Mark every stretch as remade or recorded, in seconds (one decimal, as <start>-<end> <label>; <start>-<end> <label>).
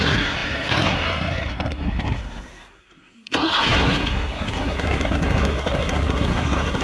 0.0-6.8 remade